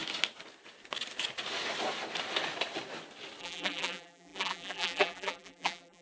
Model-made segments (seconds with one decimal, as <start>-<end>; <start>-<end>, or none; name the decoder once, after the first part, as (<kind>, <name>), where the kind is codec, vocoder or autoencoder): 3.4-6.0 (vocoder, BigVGAN v2)